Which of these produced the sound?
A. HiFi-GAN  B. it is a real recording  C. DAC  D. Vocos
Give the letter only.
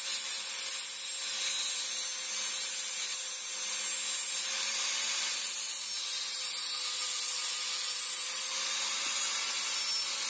B